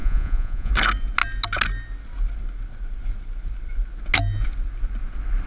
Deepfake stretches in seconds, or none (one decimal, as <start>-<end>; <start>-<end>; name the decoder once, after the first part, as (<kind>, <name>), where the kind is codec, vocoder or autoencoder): 0.0-0.7 (vocoder, Vocos)